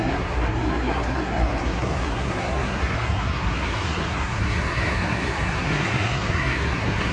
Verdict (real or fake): fake